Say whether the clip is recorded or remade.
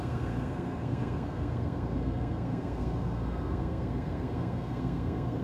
remade